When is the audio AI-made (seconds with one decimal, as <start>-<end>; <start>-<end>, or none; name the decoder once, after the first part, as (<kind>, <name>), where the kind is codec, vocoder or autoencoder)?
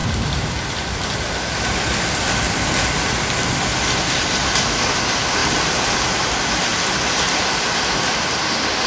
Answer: 0.0-2.2 (vocoder, BigVGAN v2); 6.7-7.4